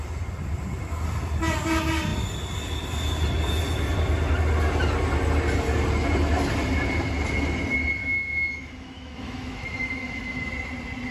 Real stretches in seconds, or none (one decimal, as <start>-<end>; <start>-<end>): 0.0-8.0; 10.5-11.1